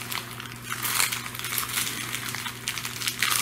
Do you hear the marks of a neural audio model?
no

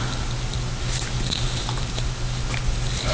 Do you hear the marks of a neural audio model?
no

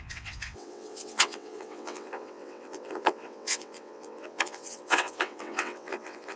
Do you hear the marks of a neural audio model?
yes